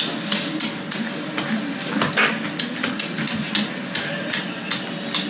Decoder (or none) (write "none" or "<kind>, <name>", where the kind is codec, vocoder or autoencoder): none